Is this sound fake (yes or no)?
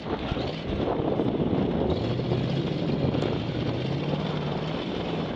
no